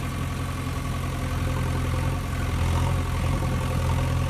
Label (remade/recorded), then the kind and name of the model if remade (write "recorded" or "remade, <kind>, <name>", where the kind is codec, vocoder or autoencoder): recorded